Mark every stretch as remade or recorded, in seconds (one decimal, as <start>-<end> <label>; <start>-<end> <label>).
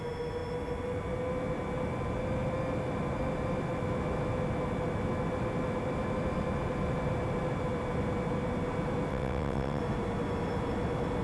0.0-9.1 recorded; 9.1-9.8 remade; 9.8-11.2 recorded